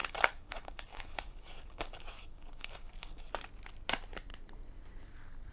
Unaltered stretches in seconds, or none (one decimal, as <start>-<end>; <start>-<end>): 3.3-5.5